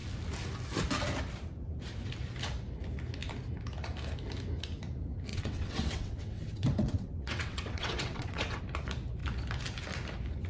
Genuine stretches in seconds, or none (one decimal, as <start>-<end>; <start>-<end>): 0.0-5.3; 8.6-10.5